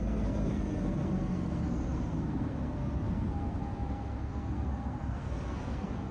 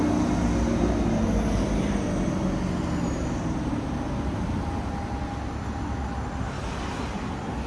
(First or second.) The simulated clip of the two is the first